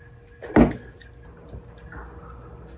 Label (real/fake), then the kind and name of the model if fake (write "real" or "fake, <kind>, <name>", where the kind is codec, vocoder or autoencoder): real